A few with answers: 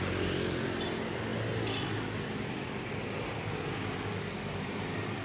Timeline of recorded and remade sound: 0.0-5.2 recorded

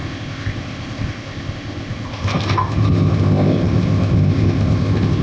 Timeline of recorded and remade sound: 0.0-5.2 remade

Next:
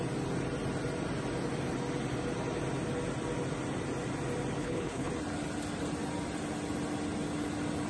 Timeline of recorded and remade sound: 0.0-4.6 recorded; 4.6-5.1 remade; 5.1-7.9 recorded

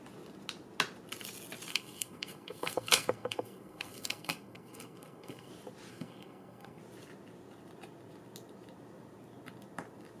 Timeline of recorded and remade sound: 0.0-1.7 recorded; 1.7-5.5 remade; 5.5-5.9 recorded; 5.9-6.8 remade; 6.8-10.2 recorded

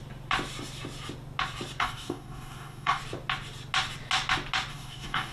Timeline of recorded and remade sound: 0.0-1.8 recorded; 1.8-3.0 remade; 3.0-4.7 recorded; 4.7-5.3 remade

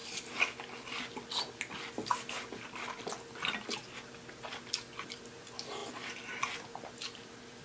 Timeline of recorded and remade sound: 0.0-7.6 recorded